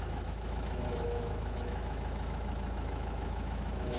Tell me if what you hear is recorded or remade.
remade